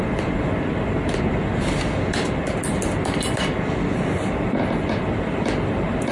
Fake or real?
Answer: real